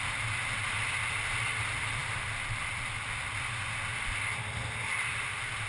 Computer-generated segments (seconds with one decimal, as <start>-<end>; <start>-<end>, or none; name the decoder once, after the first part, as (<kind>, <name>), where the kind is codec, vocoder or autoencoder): none